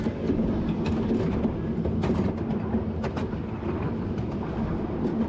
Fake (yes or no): no